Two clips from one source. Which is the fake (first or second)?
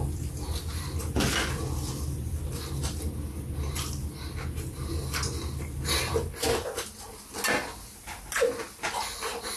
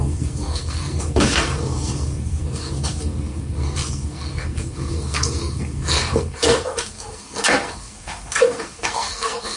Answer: second